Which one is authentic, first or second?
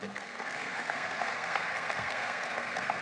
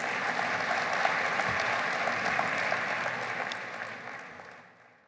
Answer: second